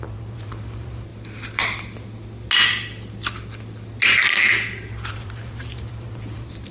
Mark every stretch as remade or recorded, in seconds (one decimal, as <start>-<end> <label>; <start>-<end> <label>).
0.0-1.1 remade; 1.1-5.1 recorded; 5.1-6.7 remade